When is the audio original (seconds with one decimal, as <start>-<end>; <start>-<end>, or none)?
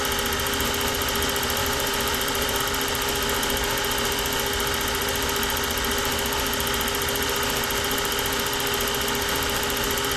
0.0-1.6; 2.6-10.2